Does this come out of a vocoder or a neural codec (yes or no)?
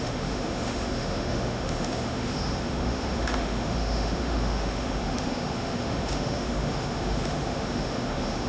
yes